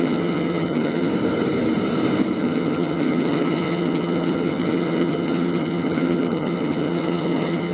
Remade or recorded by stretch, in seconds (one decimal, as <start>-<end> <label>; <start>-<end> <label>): 0.0-1.1 remade; 1.1-2.4 recorded; 2.4-7.7 remade